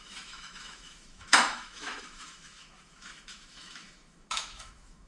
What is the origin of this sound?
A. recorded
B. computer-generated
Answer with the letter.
B